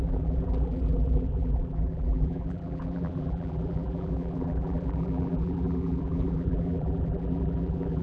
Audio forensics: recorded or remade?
remade